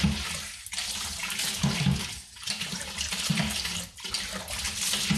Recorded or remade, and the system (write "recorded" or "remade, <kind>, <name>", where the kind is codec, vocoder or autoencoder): recorded